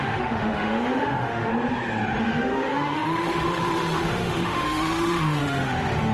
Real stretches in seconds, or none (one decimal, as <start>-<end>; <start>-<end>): 1.5-2.2